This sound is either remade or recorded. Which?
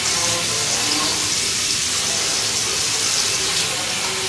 recorded